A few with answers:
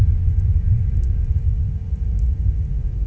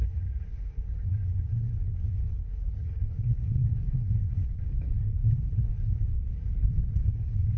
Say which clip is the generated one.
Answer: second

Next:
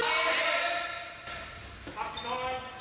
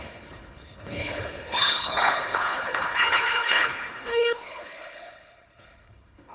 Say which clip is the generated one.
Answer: second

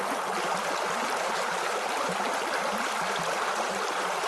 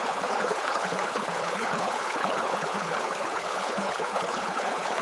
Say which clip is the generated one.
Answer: second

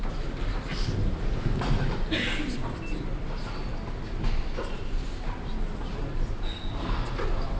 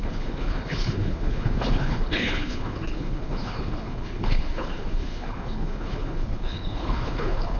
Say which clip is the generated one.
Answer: second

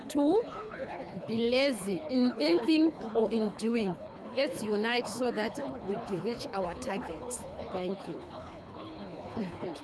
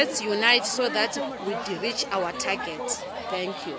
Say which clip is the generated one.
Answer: first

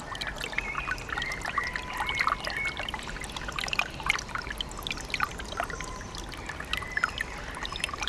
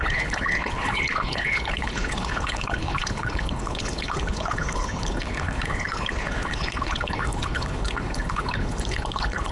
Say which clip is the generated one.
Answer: second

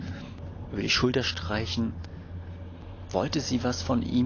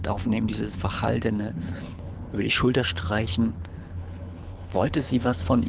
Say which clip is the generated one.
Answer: second